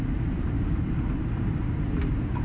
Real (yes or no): no